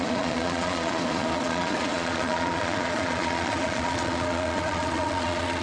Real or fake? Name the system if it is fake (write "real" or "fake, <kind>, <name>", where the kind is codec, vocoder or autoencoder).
fake, vocoder, Vocos